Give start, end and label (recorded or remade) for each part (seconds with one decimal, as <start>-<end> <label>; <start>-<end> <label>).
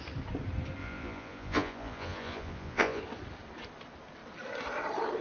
0.0-0.8 recorded; 0.8-3.0 remade; 3.0-5.2 recorded